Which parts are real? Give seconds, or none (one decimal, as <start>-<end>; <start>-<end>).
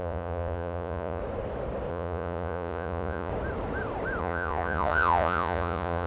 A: 1.2-1.9; 3.3-4.2